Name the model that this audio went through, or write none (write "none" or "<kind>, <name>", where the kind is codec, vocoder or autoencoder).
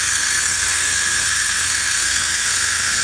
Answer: codec, SNAC